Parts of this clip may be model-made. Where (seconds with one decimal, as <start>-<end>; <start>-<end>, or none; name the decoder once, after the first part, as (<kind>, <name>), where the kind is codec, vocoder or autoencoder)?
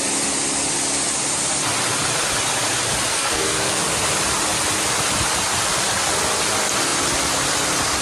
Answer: 3.1-3.8 (codec, SNAC)